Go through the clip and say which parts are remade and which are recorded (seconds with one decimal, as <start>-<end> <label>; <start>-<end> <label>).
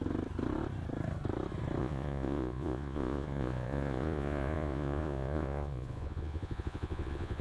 0.0-1.8 recorded; 1.8-7.4 remade